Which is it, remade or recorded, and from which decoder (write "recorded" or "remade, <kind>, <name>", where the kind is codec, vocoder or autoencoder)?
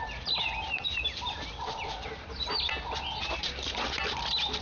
recorded